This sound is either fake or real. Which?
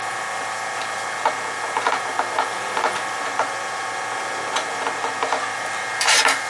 real